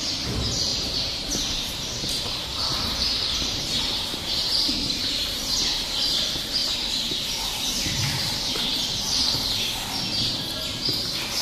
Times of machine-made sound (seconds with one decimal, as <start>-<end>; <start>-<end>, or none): 0.7-2.2; 2.7-4.5; 6.6-8.5